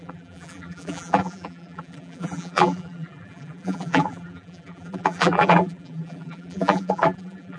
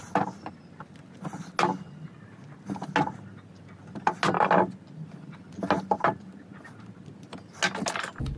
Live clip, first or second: second